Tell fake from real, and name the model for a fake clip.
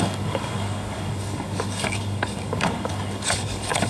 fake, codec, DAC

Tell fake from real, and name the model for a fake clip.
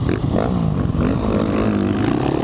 real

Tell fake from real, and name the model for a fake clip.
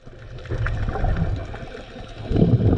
real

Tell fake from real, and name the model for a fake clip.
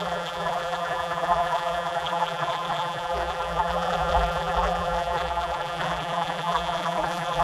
fake, vocoder, BigVGAN v2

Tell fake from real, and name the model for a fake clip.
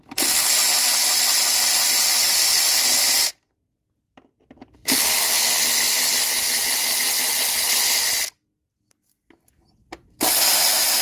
real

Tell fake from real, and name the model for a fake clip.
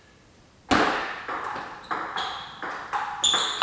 real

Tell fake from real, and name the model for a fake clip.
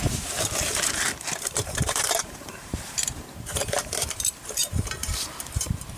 fake, vocoder, BigVGAN v2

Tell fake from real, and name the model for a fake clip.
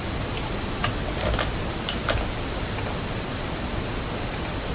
real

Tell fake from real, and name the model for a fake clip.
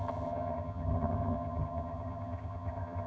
fake, vocoder, HiFi-GAN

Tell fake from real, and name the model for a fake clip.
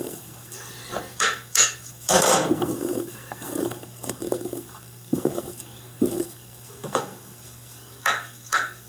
fake, codec, SNAC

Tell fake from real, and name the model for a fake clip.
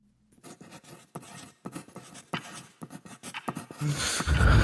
real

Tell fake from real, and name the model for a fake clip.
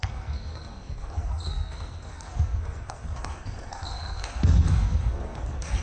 fake, codec, SNAC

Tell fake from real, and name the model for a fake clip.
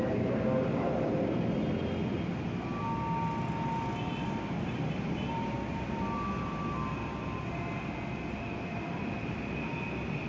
real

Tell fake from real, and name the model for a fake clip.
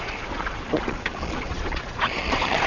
fake, vocoder, Vocos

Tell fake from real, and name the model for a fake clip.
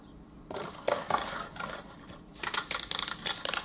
fake, vocoder, BigVGAN v2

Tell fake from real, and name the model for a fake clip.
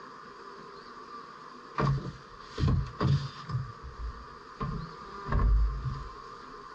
real